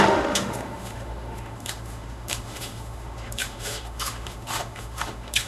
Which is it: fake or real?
fake